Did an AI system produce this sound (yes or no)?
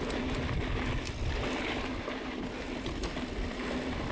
no